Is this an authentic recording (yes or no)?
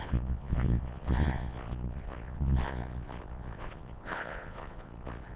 no